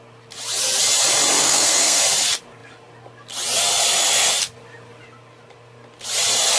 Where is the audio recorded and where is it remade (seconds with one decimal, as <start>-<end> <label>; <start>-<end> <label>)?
0.0-1.4 recorded; 1.4-2.0 remade; 2.0-6.6 recorded